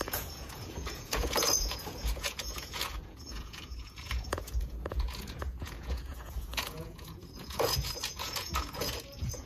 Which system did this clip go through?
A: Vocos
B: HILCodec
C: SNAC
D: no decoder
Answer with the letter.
A